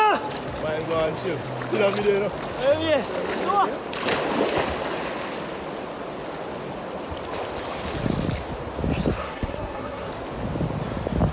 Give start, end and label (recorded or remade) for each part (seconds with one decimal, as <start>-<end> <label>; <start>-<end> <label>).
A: 0.0-9.2 recorded; 9.2-10.1 remade; 10.1-11.3 recorded